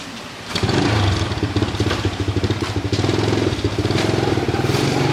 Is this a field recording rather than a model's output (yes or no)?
no